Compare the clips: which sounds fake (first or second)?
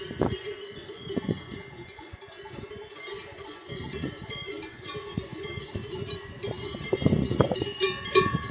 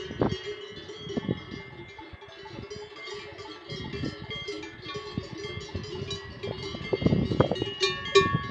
first